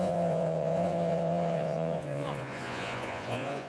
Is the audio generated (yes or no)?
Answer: yes